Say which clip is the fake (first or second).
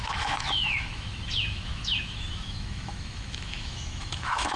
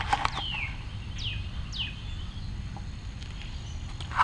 first